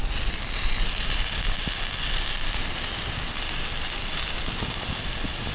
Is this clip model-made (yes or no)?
no